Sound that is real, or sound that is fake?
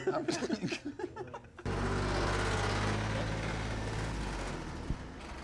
real